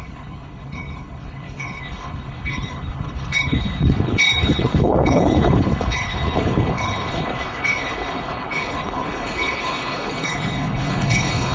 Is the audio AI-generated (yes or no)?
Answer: yes